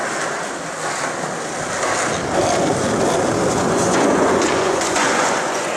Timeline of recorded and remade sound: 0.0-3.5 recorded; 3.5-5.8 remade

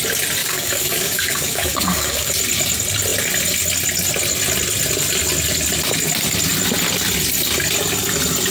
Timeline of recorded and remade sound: 0.0-0.4 recorded; 0.4-2.3 remade; 2.3-8.5 recorded

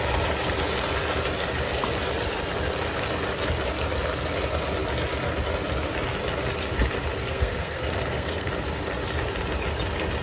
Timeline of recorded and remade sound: 0.0-7.2 recorded; 7.2-8.5 remade; 8.5-10.2 recorded

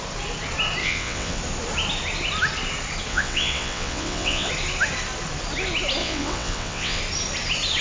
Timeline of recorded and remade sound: 0.0-0.8 recorded; 0.8-1.4 remade; 1.4-3.1 recorded; 3.1-4.5 remade; 4.5-6.0 recorded; 6.0-7.0 remade; 7.0-7.8 recorded

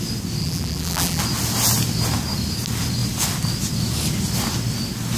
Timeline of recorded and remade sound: 0.0-0.4 recorded; 0.4-1.2 remade; 1.2-5.2 recorded